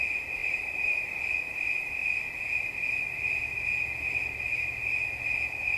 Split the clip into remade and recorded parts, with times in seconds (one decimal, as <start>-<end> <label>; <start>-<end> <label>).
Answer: 0.0-0.4 recorded; 0.4-1.2 remade; 1.2-5.8 recorded